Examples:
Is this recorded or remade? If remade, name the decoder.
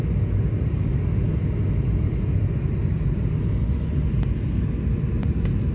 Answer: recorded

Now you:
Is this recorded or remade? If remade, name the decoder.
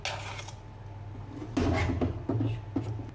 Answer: recorded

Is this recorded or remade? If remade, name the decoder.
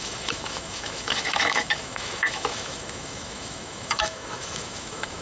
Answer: remade, autoencoder, DAC-VAE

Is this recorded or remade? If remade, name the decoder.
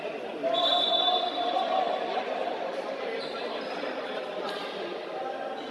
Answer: recorded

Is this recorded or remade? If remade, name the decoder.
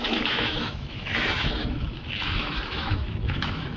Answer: remade, autoencoder, DAC-VAE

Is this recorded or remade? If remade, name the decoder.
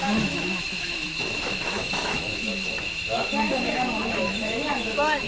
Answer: remade, autoencoder, DAC-VAE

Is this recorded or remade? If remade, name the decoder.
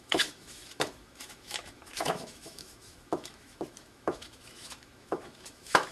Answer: remade, autoencoder, DAC-VAE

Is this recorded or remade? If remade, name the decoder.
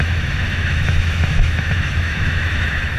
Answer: remade, autoencoder, DAC-VAE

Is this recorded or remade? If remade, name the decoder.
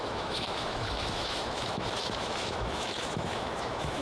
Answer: remade, autoencoder, DAC-VAE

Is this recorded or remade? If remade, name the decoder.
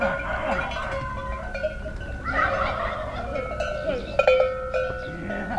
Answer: recorded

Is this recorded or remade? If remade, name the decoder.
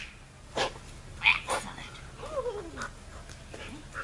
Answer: recorded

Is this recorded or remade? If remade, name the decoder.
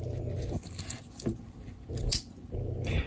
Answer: recorded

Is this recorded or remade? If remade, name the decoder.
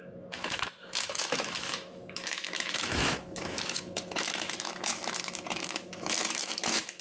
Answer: remade, autoencoder, DAC-VAE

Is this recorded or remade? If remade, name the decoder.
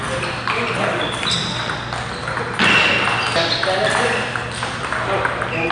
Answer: recorded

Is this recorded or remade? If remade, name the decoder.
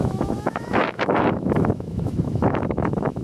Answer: remade, autoencoder, DAC-VAE